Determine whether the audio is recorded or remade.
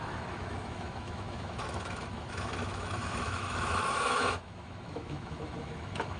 remade